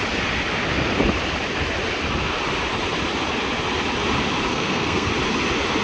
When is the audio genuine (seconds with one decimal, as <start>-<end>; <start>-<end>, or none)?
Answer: 0.0-4.5; 5.1-5.8